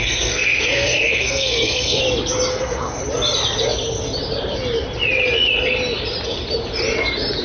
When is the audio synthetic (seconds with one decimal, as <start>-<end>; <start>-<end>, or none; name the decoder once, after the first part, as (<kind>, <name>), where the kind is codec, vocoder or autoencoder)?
0.0-2.0 (codec, SNAC); 2.5-3.0